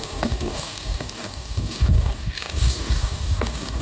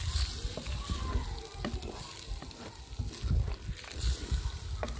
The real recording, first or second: second